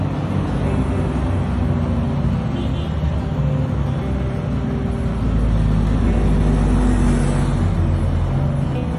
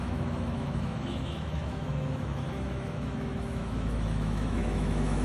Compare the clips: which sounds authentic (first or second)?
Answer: first